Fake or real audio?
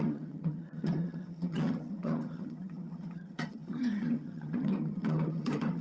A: fake